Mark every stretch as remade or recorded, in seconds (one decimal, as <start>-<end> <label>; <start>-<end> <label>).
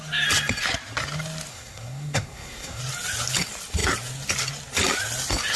0.0-1.5 recorded; 1.5-2.8 remade; 2.8-5.6 recorded